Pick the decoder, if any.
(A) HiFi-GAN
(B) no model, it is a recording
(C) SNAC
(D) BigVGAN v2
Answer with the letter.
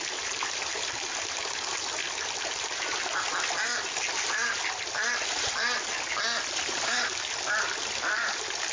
B